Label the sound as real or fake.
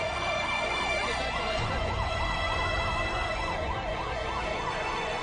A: fake